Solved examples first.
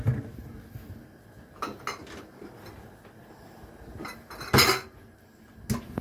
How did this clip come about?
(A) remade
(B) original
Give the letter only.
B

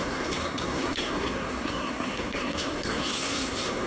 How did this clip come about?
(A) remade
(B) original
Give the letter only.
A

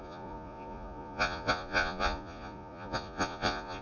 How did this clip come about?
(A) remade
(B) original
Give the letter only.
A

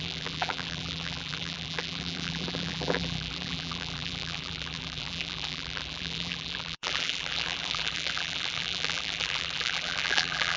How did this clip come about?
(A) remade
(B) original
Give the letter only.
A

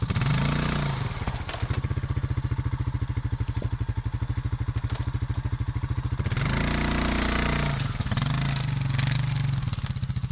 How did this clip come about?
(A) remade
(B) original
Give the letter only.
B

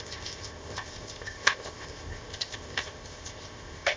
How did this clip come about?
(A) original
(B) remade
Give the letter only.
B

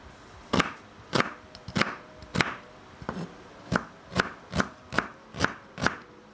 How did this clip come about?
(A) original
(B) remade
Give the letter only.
A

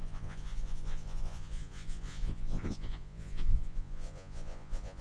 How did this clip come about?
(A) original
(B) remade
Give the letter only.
B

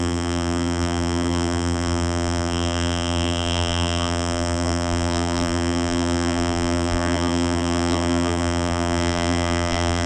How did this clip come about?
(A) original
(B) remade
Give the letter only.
B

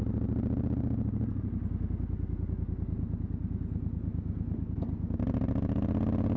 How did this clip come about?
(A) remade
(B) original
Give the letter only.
B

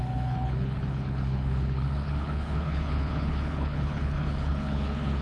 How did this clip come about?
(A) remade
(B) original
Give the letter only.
A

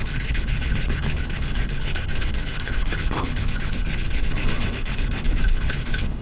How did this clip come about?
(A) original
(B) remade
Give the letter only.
B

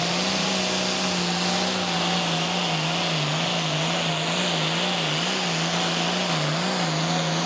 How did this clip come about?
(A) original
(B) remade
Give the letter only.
A